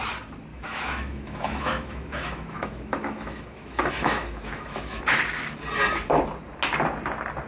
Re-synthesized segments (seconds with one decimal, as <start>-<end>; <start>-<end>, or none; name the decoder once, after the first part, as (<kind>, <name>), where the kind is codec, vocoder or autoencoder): 0.5-5.0 (autoencoder, DAC-VAE)